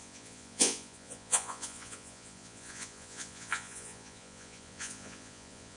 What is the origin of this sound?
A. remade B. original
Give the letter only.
A